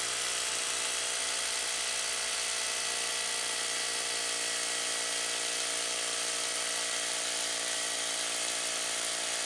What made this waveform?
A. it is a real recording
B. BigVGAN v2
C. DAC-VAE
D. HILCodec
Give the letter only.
A